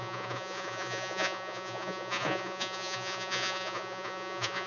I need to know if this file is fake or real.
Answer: fake